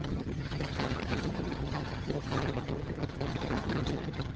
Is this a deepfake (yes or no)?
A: yes